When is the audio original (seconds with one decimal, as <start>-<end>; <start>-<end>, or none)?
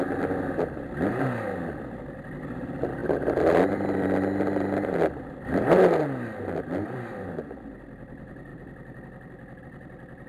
0.0-8.5; 9.6-10.3